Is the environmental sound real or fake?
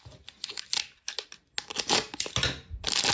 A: real